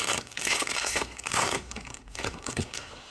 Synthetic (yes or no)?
yes